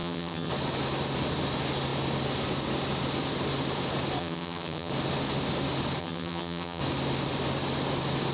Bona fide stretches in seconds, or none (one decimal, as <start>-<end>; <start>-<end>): 0.5-4.2; 4.9-6.0; 6.8-8.3